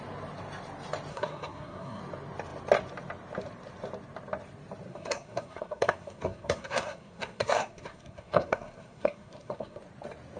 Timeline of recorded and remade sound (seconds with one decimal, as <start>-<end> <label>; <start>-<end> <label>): 0.0-1.1 recorded; 1.1-2.0 remade; 2.0-4.9 recorded; 4.9-9.8 remade; 9.8-10.4 recorded